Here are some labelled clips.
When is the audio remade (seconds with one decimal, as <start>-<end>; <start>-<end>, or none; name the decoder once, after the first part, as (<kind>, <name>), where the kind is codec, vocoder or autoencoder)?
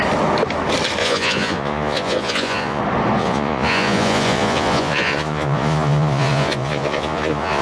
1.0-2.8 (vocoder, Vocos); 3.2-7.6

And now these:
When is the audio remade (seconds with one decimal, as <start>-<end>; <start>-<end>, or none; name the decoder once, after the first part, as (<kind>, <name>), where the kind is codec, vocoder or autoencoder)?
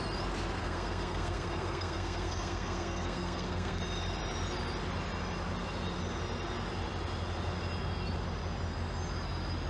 0.6-3.8 (codec, SNAC)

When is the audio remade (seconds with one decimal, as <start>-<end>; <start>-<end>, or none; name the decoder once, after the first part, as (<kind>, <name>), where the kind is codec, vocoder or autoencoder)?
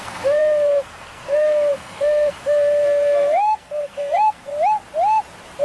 0.0-4.5 (codec, SNAC)